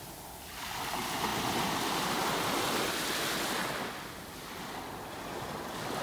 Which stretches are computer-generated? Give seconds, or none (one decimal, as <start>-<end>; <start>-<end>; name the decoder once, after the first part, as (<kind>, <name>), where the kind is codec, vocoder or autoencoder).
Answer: 1.3-2.3 (vocoder, BigVGAN v2)